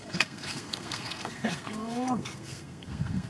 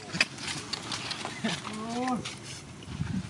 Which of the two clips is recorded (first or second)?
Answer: second